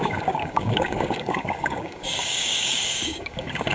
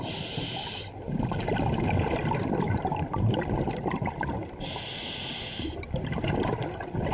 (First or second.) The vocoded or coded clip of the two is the first